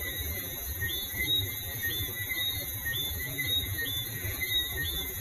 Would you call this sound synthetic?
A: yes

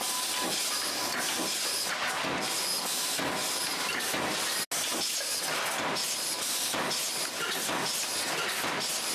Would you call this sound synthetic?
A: no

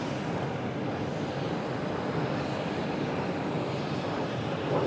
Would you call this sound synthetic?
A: no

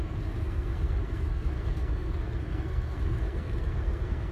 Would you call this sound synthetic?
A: yes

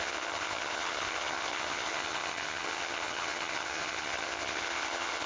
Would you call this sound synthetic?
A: yes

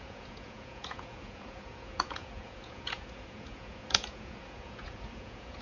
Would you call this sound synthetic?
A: yes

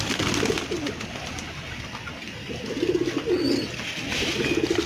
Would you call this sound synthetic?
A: no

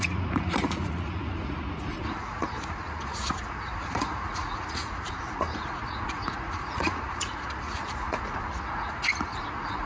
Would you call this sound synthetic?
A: yes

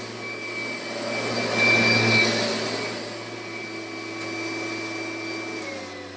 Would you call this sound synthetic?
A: no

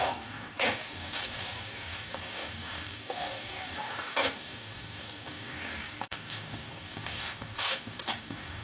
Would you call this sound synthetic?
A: yes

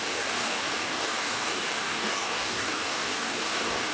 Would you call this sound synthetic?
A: yes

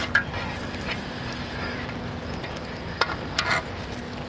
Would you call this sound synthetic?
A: no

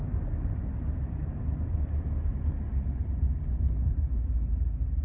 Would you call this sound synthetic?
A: no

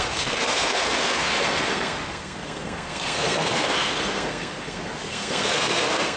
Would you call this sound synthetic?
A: yes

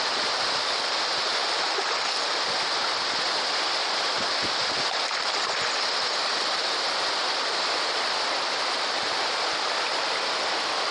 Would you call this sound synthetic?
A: no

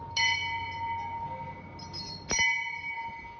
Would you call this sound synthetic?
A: no